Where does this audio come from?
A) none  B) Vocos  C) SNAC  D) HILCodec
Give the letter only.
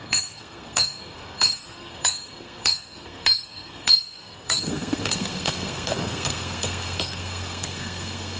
C